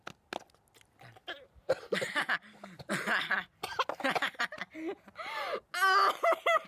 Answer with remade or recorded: recorded